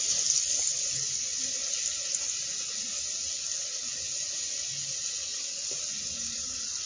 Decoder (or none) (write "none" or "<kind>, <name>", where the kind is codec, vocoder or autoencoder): none